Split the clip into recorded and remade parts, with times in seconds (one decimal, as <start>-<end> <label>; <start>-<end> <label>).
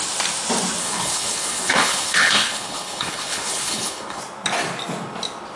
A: 0.0-0.8 recorded; 0.8-4.2 remade; 4.2-5.6 recorded